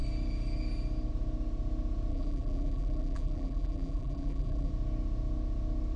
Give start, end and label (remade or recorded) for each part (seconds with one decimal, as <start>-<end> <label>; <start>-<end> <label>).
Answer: 0.0-2.1 recorded; 2.1-4.7 remade; 4.7-6.0 recorded